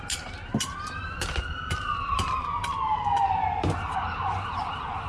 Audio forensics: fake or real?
real